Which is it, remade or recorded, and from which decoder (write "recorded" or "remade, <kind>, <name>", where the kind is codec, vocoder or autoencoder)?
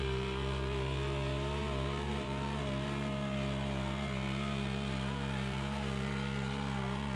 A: remade, vocoder, BigVGAN v2